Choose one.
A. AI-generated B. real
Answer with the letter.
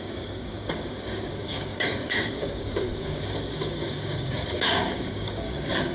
A